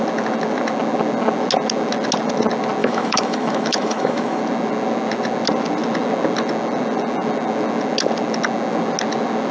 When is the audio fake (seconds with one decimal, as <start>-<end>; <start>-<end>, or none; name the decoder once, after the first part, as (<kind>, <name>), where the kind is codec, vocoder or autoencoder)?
2.8-4.4 (autoencoder, DAC-VAE)